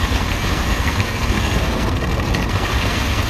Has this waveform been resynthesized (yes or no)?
yes